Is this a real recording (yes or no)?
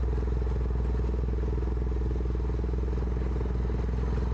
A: yes